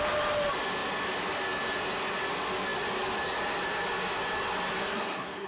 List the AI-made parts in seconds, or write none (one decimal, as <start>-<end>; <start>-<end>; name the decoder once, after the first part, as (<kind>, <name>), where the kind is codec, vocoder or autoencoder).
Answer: 4.8-5.5 (codec, SNAC)